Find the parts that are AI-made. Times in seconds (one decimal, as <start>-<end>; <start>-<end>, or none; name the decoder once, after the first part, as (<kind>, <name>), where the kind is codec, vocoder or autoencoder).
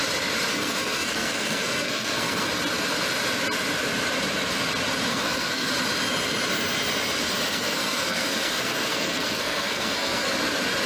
0.5-2.5 (codec, SNAC); 5.1-5.7; 7.5-10.3